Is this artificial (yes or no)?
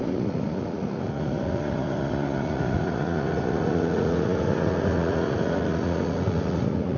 yes